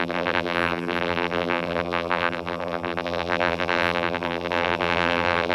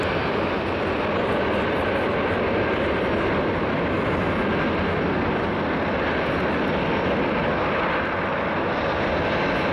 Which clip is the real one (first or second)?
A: second